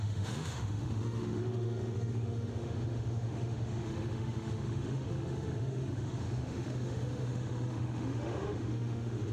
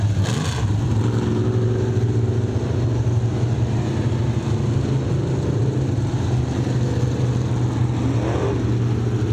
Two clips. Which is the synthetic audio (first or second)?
first